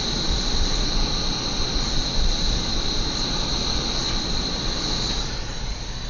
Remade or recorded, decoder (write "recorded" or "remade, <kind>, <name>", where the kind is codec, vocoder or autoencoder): recorded